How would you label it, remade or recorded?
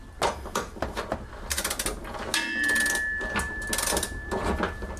recorded